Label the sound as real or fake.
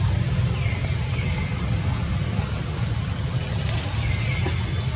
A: real